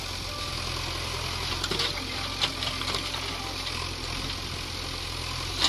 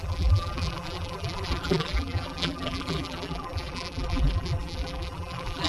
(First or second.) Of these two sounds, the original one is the first